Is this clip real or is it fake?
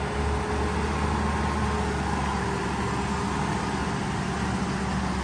real